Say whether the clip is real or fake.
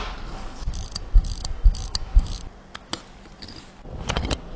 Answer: real